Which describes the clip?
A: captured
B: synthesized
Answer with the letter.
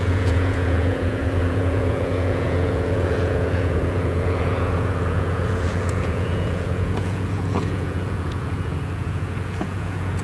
B